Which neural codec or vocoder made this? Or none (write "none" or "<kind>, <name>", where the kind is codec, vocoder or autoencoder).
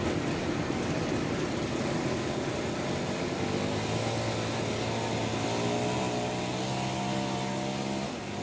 none